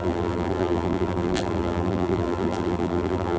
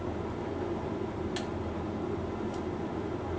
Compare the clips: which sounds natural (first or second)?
second